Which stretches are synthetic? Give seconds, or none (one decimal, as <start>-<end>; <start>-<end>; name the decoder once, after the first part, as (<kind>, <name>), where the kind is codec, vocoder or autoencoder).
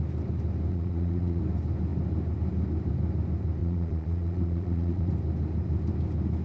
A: 0.7-1.4 (vocoder, Vocos); 3.6-5.1